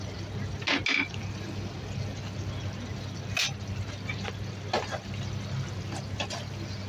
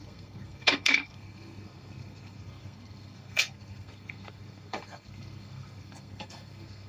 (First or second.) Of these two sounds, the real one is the first